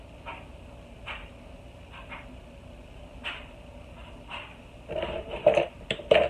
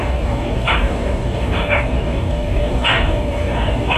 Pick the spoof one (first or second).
second